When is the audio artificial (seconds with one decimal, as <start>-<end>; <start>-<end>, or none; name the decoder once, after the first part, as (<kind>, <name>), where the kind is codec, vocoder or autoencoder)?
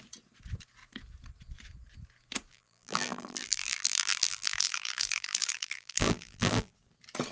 2.5-6.7 (vocoder, BigVGAN v2)